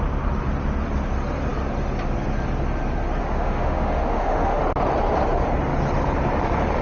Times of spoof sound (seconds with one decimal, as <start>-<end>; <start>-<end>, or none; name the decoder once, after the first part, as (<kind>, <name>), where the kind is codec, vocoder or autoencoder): 3.2-4.6 (autoencoder, DAC-VAE)